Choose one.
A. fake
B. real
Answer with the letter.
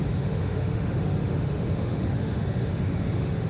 A